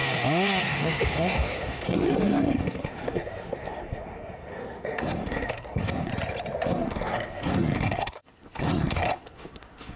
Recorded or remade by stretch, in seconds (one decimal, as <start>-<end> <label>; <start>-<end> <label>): 0.0-0.6 recorded; 0.6-6.1 remade; 6.1-6.7 recorded; 6.7-10.0 remade